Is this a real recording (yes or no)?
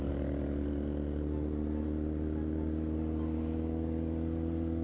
yes